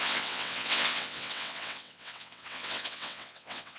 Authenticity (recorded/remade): remade